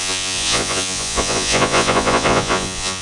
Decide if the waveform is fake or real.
fake